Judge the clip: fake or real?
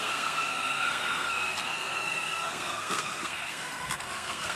fake